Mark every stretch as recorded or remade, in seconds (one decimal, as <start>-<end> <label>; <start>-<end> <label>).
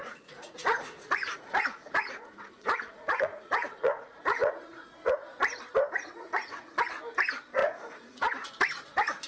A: 0.0-5.2 remade; 5.2-6.2 recorded; 6.2-6.8 remade; 6.8-7.6 recorded; 7.6-8.5 remade; 8.5-9.3 recorded